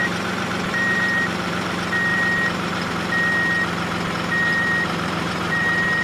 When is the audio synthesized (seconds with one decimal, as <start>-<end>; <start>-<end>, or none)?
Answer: 0.0-1.7; 2.1-2.9; 4.5-6.0